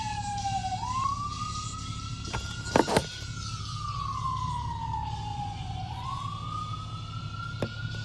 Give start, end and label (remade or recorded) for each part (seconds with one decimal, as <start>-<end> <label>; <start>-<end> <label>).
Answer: 0.0-5.3 recorded; 5.3-6.2 remade; 6.2-8.0 recorded